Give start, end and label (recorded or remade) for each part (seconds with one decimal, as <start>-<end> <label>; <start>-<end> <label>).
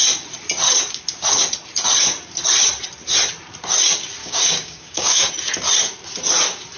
0.0-4.2 recorded; 4.2-5.3 remade; 5.3-6.8 recorded